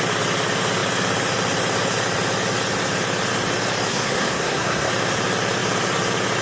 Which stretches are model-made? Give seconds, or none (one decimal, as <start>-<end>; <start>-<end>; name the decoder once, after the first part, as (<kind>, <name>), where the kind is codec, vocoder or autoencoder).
3.9-4.9 (codec, SNAC)